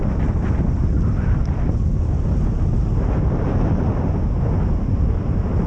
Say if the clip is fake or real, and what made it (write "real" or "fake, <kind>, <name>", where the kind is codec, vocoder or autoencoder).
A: real